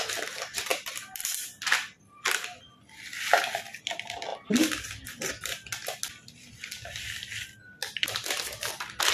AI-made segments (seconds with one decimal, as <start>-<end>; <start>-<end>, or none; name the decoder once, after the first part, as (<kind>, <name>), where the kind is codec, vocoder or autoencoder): 0.7-1.6 (vocoder, BigVGAN v2); 7.8-8.7